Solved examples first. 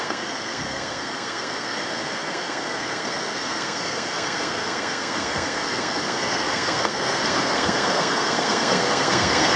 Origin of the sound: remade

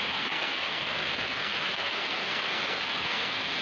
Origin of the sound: remade